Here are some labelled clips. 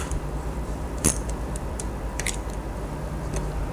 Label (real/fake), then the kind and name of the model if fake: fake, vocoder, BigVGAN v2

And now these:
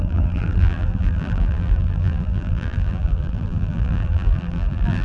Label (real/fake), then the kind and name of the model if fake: fake, vocoder, BigVGAN v2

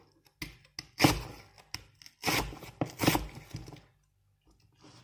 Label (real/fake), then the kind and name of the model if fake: real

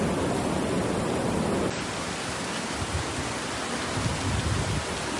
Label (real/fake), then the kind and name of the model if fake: real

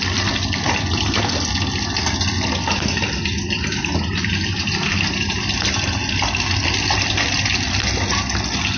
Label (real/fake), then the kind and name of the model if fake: real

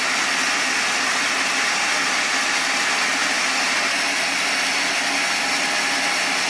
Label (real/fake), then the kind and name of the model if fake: real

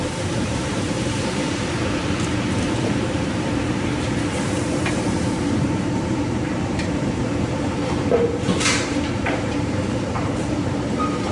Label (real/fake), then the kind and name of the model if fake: fake, vocoder, BigVGAN v2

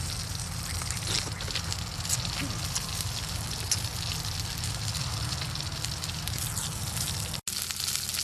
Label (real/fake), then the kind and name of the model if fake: real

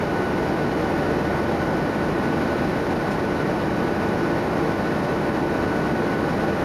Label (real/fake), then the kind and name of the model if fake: real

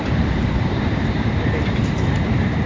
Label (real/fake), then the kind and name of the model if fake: fake, vocoder, BigVGAN v2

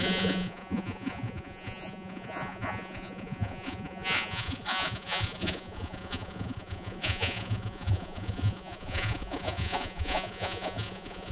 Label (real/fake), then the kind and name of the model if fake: fake, vocoder, Vocos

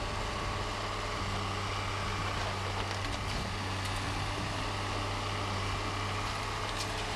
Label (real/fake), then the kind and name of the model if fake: real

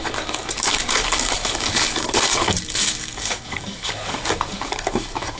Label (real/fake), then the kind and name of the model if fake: fake, codec, DAC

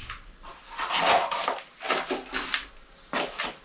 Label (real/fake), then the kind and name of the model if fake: real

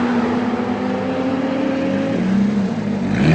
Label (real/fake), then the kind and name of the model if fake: real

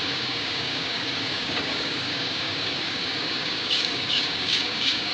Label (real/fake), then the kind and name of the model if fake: fake, codec, DAC